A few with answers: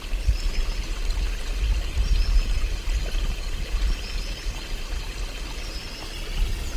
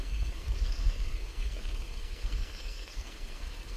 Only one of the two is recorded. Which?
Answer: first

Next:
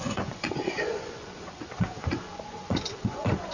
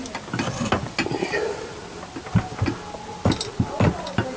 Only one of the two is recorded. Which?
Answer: second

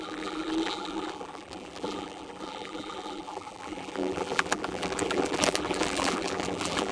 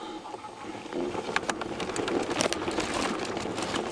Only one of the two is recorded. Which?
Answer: second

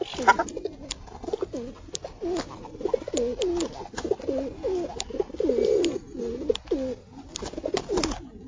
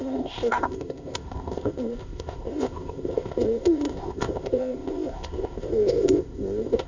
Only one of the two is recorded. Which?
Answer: first